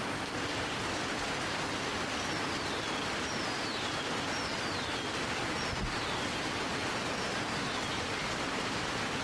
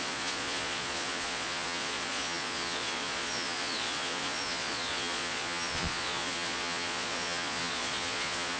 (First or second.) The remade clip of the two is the second